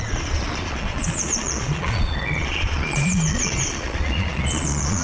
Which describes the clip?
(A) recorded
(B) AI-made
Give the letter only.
B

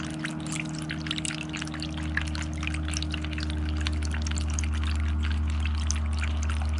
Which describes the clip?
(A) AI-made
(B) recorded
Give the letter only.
B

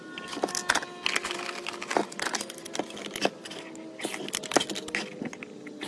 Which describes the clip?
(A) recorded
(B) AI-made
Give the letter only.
A